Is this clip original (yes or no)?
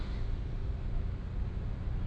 yes